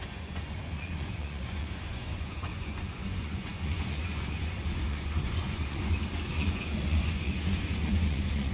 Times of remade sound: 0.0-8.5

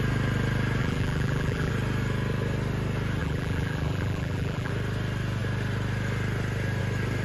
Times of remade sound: 0.8-1.7; 3.2-4.7

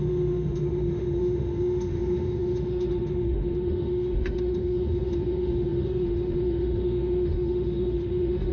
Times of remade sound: 0.0-8.5

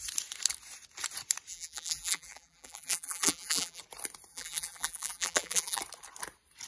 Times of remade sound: 1.5-3.8; 4.3-5.8

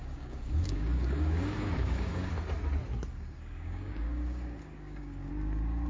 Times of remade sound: 0.0-2.3; 3.1-5.3

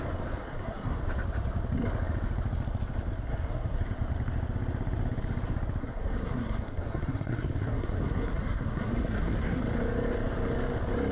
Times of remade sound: 0.4-1.0; 3.3-3.8; 5.8-9.6